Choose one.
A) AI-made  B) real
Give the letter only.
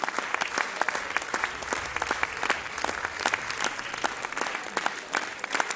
B